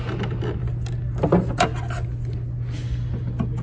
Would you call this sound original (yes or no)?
yes